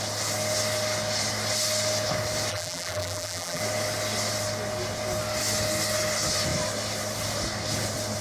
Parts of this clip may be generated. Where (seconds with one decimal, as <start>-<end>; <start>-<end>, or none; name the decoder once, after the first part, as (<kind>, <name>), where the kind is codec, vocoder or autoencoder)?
2.5-3.6 (vocoder, BigVGAN v2)